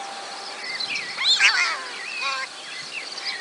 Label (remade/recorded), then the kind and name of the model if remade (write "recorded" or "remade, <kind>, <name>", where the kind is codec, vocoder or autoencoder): recorded